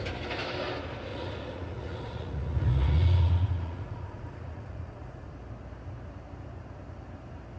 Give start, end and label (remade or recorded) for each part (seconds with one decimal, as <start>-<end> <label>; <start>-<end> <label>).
0.0-1.1 recorded; 1.1-5.3 remade; 5.3-7.6 recorded